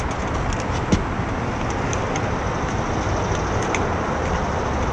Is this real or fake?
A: real